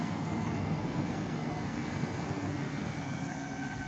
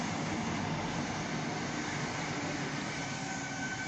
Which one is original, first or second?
second